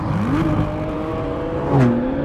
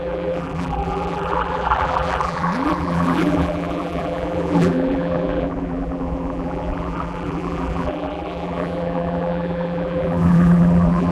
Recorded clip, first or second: first